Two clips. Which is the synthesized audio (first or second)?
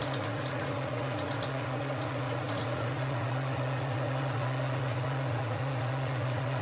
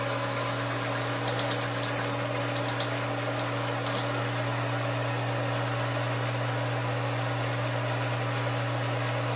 first